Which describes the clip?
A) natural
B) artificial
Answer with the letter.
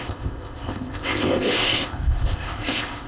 B